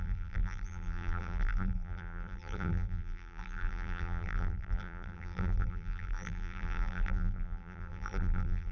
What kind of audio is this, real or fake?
fake